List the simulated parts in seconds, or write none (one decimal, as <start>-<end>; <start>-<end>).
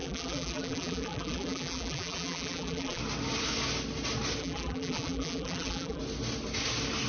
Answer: 0.0-3.0; 4.4-6.0